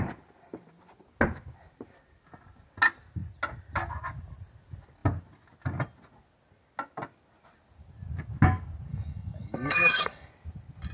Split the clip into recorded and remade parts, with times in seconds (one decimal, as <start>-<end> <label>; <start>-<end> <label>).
0.0-8.9 recorded; 8.9-10.3 remade; 10.3-10.9 recorded